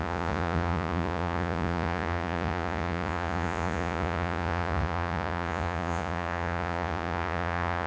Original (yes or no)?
no